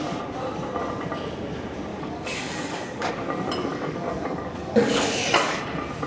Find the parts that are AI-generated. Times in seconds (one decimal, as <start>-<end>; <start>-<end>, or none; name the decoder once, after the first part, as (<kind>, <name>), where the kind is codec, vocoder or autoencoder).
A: 1.9-3.1 (codec, DAC); 3.7-5.6